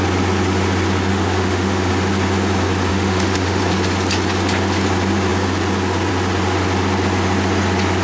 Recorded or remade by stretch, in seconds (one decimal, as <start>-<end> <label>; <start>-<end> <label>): 0.0-1.1 recorded; 1.1-1.9 remade; 1.9-2.9 recorded; 2.9-3.6 remade; 3.6-8.0 recorded